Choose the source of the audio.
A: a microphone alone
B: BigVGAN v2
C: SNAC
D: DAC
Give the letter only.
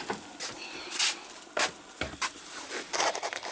A